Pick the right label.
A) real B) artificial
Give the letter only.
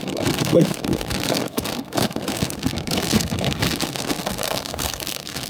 B